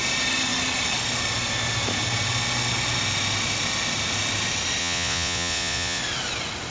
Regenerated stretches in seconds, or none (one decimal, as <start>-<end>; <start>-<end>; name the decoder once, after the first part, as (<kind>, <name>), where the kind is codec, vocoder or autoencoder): 4.8-6.0 (vocoder, Vocos)